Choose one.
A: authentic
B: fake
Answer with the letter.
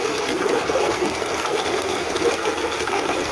B